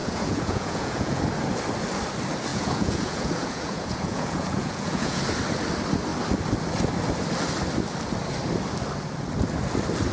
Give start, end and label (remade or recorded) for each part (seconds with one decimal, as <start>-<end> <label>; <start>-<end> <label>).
0.0-1.2 remade; 1.2-2.5 recorded; 2.5-5.2 remade; 5.2-10.1 recorded